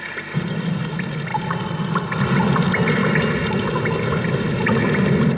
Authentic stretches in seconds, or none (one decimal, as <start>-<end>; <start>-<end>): 3.0-5.4